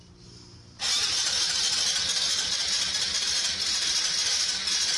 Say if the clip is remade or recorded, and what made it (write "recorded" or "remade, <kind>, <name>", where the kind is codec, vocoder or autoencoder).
recorded